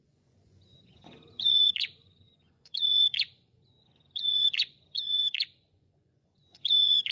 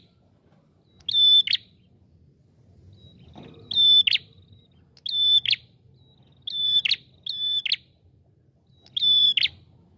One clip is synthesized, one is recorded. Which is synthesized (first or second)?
first